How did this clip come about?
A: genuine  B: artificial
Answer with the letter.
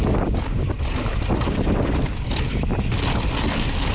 A